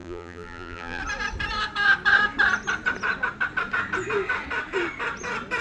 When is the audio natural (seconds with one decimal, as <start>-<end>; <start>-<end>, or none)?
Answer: 1.0-5.6